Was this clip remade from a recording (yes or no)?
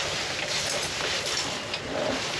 no